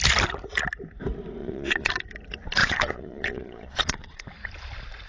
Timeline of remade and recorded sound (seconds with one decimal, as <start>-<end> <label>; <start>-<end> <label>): 0.0-1.4 recorded; 1.4-1.9 remade; 1.9-2.6 recorded; 2.6-4.3 remade; 4.3-5.1 recorded